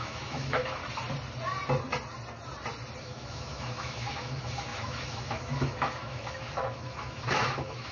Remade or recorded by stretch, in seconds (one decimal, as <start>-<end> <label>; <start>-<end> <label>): 0.0-0.8 remade; 0.8-3.0 recorded; 3.0-7.9 remade